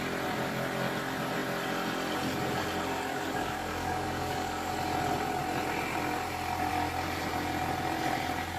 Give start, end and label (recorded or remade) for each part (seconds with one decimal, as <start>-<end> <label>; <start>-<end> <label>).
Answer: 0.0-3.1 recorded; 3.1-4.7 remade; 4.7-8.6 recorded